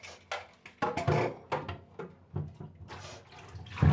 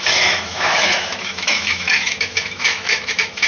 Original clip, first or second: first